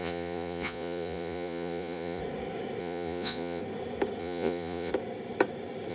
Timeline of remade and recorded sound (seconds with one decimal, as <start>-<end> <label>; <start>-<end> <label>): 0.0-2.2 remade; 2.2-2.8 recorded; 2.8-3.6 remade; 3.6-4.2 recorded; 4.2-4.9 remade; 4.9-5.9 recorded